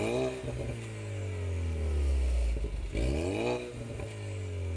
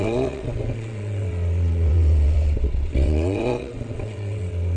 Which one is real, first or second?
first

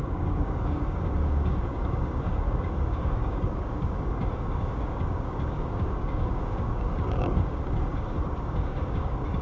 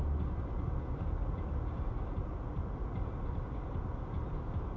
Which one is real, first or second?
second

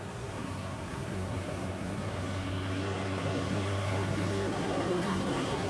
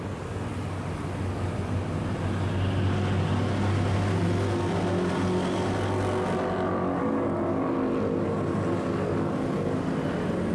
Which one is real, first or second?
second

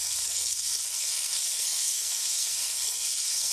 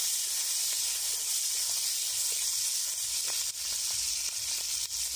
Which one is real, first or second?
second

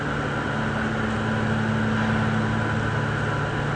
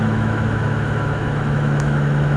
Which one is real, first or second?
first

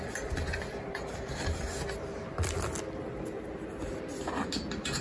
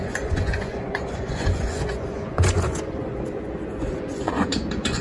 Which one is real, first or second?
first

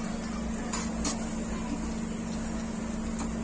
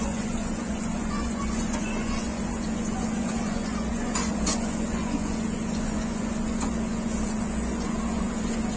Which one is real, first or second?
first